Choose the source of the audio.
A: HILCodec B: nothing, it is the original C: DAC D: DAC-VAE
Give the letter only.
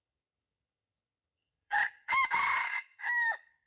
C